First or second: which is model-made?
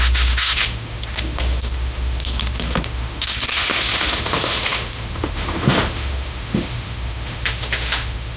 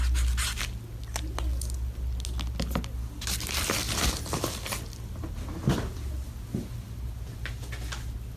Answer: first